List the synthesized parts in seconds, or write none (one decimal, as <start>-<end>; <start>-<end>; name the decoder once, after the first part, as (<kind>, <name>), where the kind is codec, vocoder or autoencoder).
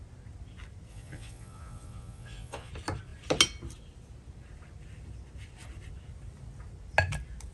0.9-2.7 (vocoder, Vocos)